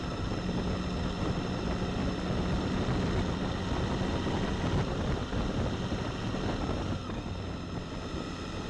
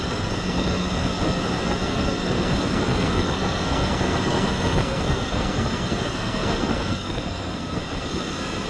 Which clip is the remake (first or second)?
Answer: second